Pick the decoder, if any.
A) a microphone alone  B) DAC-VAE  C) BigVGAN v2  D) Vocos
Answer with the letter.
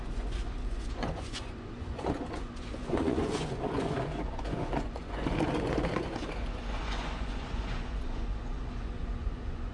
D